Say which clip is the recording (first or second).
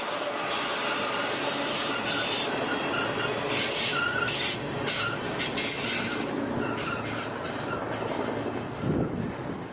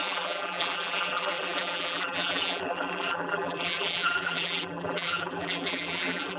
first